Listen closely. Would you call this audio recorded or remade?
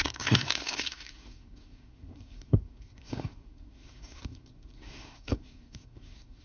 remade